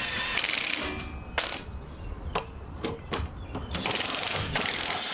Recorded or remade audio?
recorded